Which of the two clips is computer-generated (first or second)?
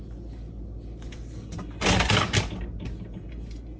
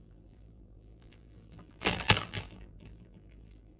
second